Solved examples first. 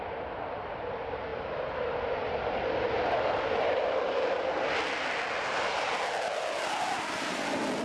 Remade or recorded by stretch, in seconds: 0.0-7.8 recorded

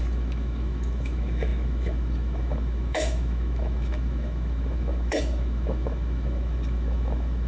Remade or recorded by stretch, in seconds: 0.0-7.5 remade

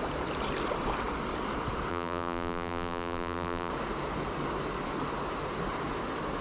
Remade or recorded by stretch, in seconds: 0.0-1.9 recorded; 1.9-3.7 remade; 3.7-6.4 recorded

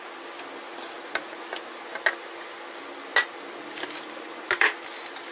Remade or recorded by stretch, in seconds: 0.0-5.3 recorded